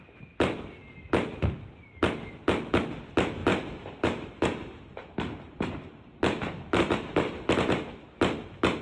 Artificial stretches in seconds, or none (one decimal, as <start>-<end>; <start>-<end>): 3.4-8.0

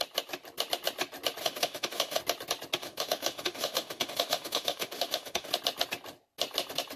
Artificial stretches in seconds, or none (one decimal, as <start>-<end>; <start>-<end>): 1.4-2.2; 2.8-5.5

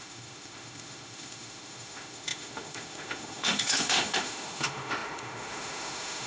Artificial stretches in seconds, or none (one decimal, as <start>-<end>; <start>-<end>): 0.0-6.3